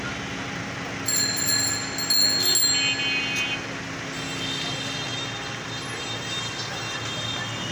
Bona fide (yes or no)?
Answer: yes